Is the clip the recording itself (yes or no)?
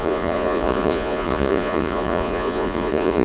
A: no